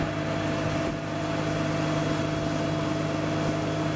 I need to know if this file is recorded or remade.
recorded